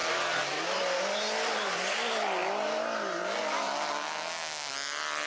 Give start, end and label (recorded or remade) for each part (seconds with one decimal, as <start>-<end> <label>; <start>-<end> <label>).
0.0-5.3 recorded